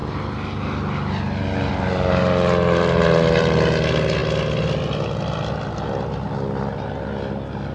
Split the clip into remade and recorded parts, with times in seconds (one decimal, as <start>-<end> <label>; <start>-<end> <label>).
0.0-7.7 recorded